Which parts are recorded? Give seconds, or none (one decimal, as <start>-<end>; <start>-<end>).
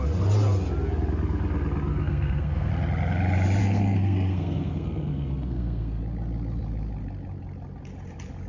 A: 0.0-1.9; 2.7-3.6; 6.0-8.5